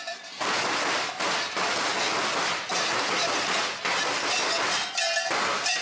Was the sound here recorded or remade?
recorded